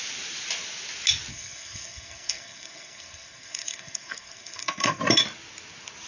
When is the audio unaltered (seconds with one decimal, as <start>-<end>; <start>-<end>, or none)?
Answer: 0.0-1.3; 5.0-6.1